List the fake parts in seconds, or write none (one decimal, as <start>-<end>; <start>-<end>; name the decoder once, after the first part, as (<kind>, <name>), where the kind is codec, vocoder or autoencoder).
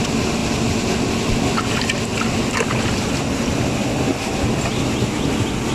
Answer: none